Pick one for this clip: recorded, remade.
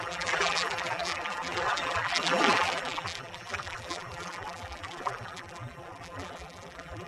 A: remade